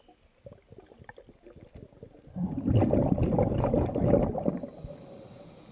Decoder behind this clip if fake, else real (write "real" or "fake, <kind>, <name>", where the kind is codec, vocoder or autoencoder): real